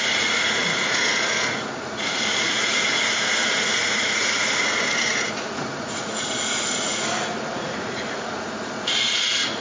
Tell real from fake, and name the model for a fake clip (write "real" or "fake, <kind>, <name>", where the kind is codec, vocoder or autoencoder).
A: fake, vocoder, Vocos